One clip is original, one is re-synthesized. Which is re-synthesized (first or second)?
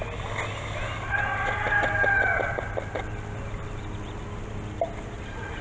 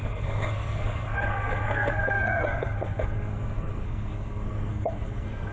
second